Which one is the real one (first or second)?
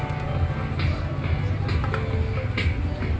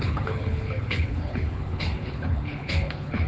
first